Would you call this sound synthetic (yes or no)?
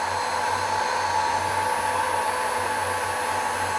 no